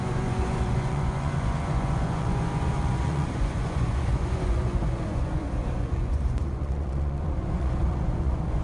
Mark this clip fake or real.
fake